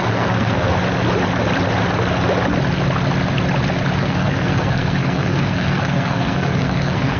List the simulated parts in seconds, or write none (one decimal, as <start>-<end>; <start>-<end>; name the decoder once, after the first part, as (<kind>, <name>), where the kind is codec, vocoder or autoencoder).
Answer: 0.0-0.7 (codec, SNAC); 4.0-7.2